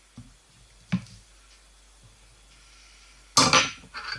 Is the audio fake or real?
real